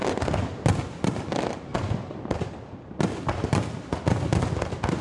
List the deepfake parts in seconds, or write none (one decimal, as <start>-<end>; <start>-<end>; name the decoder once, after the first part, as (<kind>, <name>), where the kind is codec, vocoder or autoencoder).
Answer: none